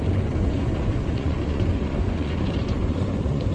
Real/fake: fake